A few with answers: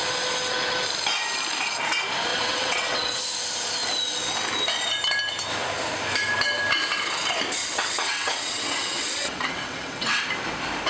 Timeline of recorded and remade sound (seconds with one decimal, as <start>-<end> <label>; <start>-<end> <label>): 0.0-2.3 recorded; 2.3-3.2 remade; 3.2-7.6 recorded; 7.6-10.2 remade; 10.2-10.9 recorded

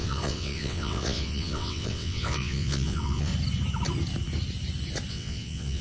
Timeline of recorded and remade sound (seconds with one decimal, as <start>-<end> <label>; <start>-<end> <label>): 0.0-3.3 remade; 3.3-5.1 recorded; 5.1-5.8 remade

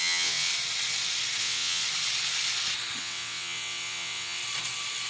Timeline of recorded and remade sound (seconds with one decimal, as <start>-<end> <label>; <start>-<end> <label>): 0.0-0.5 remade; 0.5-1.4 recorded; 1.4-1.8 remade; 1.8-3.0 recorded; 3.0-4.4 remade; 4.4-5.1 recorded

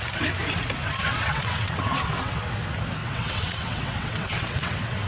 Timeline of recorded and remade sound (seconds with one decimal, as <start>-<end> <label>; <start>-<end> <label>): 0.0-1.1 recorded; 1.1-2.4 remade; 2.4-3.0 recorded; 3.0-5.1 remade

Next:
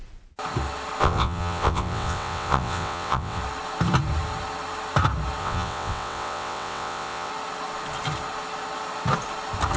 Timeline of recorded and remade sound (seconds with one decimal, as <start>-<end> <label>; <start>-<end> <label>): 0.0-1.0 recorded; 1.0-3.4 remade; 3.4-5.4 recorded; 5.4-7.3 remade; 7.3-9.8 recorded

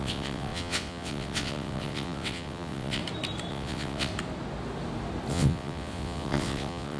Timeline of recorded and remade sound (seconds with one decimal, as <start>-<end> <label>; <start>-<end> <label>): 0.0-3.0 remade; 3.0-3.5 recorded; 3.5-4.1 remade; 4.1-5.3 recorded; 5.3-7.0 remade